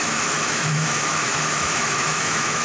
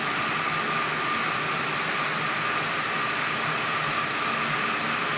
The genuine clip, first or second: second